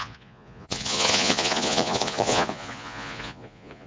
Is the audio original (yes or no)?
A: no